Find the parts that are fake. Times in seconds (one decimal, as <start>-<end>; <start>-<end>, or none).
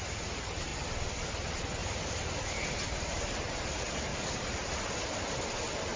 1.8-2.7; 4.1-4.8